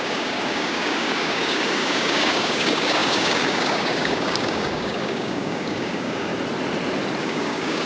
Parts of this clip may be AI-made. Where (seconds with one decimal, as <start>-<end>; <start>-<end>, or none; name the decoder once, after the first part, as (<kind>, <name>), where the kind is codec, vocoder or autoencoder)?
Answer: 0.0-6.3 (codec, DAC); 7.2-7.9